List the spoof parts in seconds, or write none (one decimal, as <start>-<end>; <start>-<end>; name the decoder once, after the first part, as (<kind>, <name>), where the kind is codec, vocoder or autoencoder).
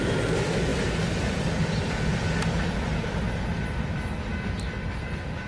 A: none